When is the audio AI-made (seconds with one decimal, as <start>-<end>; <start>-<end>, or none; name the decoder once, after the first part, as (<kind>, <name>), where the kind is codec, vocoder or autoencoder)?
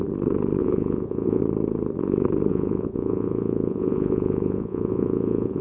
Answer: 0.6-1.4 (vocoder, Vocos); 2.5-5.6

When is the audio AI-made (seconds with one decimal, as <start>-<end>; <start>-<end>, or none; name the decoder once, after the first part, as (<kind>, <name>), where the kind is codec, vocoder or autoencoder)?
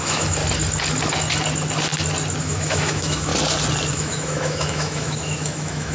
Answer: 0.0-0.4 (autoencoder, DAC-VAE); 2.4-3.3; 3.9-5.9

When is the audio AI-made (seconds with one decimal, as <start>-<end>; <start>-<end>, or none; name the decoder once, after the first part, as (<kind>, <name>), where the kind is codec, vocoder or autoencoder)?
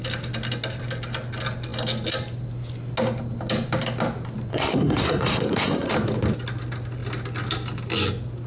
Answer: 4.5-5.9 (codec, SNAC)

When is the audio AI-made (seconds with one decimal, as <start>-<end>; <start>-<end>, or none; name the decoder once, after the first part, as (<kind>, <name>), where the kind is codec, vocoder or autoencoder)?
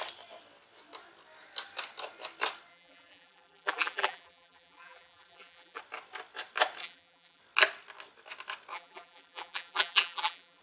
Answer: 2.7-5.8 (vocoder, BigVGAN v2); 6.8-7.4; 8.7-10.6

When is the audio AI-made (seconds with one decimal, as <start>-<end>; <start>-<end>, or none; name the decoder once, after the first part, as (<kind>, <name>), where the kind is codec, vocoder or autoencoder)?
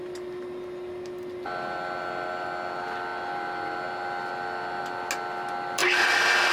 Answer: none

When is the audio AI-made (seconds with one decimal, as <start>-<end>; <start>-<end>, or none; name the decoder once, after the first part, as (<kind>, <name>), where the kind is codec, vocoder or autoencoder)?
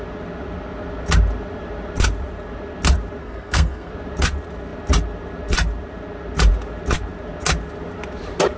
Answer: 3.2-3.9 (codec, SNAC)